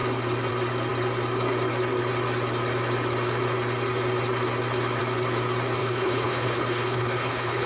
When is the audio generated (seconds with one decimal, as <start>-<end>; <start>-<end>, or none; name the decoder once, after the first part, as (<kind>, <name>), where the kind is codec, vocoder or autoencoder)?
5.8-7.7 (codec, HILCodec)